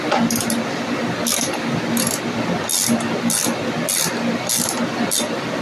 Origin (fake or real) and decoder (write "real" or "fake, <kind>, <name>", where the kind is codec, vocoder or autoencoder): real